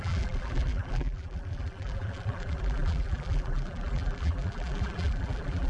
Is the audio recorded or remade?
remade